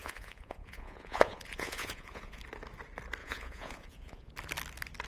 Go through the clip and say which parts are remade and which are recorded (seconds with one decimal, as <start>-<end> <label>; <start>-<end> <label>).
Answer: 0.0-2.4 remade; 2.4-3.2 recorded; 3.2-4.3 remade; 4.3-5.1 recorded